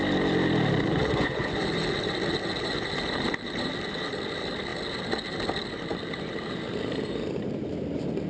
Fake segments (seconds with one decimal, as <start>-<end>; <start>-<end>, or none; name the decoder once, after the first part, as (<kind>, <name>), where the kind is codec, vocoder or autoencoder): 0.9-1.6 (vocoder, Vocos)